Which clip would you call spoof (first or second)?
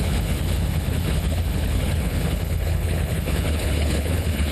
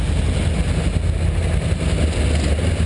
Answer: first